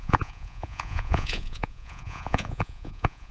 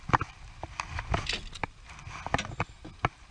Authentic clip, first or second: second